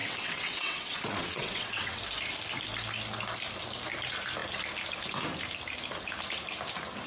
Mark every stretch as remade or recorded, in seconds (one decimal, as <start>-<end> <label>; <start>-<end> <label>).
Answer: 0.0-2.0 remade; 2.0-7.1 recorded